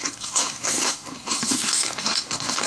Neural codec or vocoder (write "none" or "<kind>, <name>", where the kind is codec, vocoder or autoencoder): codec, SNAC